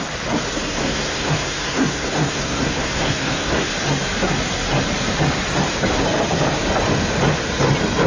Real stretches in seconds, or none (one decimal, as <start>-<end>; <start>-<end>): 0.0-0.8; 3.7-8.1